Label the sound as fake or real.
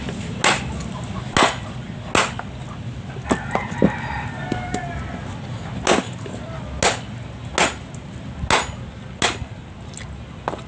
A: real